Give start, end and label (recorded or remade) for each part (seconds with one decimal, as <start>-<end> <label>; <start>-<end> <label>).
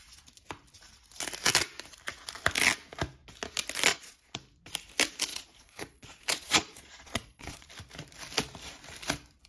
0.0-3.9 recorded; 3.9-4.4 remade; 4.4-5.3 recorded; 5.3-7.7 remade; 7.7-9.5 recorded